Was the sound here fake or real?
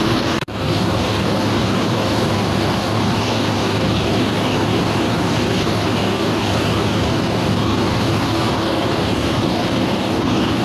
fake